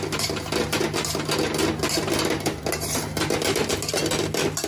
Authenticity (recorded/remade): recorded